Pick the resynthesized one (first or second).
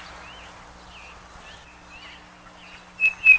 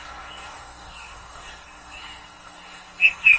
second